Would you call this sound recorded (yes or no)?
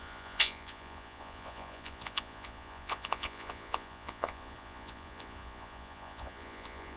no